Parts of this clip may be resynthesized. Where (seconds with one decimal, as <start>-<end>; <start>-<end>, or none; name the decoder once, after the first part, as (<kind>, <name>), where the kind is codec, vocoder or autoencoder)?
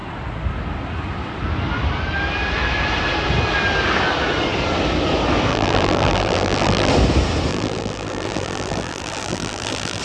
5.5-6.9 (vocoder, BigVGAN v2); 7.5-10.0